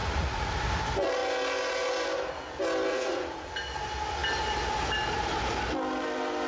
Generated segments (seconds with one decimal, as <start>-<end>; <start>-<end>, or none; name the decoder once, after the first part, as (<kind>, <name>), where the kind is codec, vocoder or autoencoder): 0.0-0.5 (vocoder, Vocos); 2.9-3.5